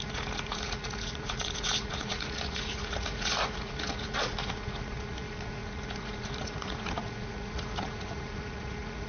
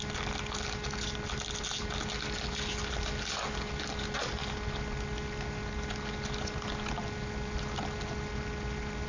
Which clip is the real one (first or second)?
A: second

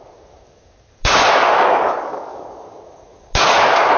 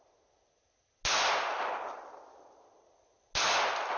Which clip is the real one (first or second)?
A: second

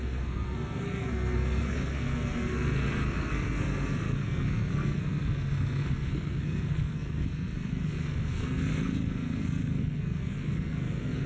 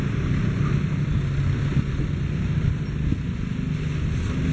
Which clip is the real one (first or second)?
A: second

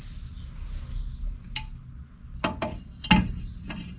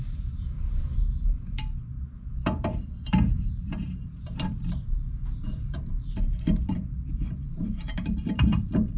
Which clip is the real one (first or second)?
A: first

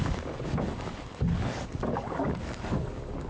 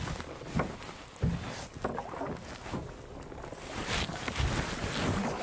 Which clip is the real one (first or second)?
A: second